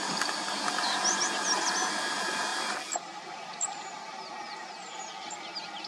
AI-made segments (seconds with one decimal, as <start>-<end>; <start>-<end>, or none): none